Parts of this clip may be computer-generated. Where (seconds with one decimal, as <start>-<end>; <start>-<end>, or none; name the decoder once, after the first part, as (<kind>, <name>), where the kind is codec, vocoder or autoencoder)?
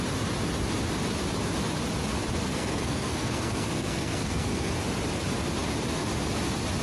2.4-4.7 (codec, SNAC)